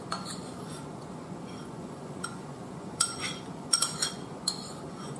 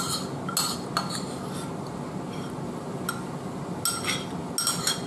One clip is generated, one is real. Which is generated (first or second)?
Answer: first